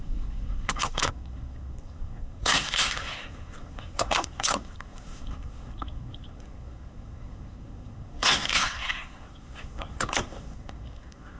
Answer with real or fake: fake